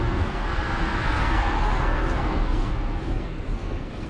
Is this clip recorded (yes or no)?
no